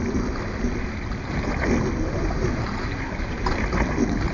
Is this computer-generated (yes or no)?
no